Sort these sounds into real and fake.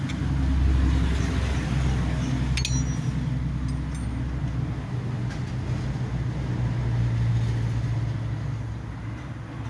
real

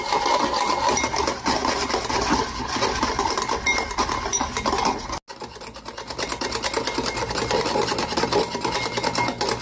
real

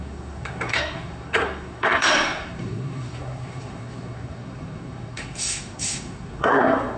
fake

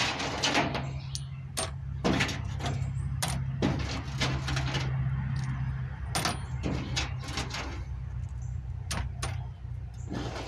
real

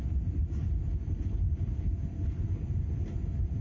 real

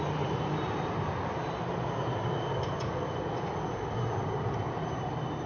real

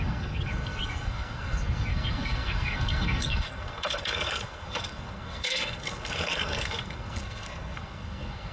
fake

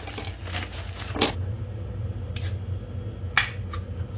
real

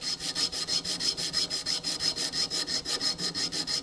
real